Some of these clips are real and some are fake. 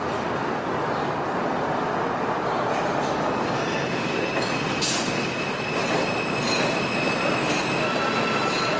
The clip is real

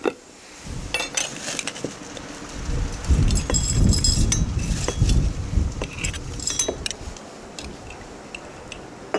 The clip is real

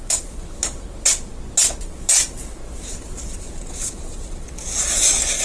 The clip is real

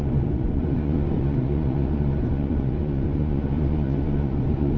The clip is fake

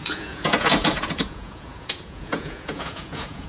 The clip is fake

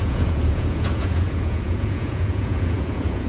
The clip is fake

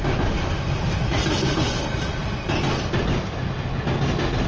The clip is real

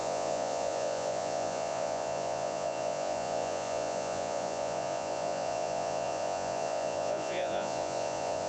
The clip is fake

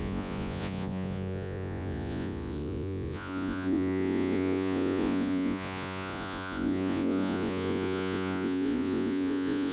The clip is fake